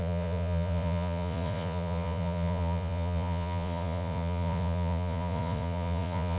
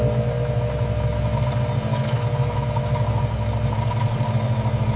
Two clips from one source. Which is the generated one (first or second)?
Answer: first